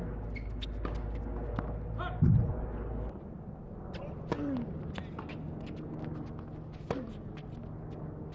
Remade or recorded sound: recorded